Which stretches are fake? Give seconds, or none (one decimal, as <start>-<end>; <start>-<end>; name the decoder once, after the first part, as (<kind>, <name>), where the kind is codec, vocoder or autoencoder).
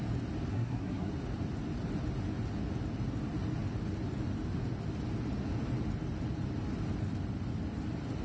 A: 0.5-1.1 (codec, SNAC)